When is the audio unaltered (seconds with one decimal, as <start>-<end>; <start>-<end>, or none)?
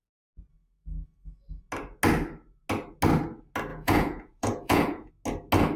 0.0-3.7; 5.1-5.8